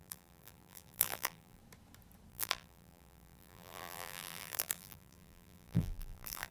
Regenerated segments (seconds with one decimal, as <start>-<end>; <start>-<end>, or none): 0.0-1.6; 2.3-6.5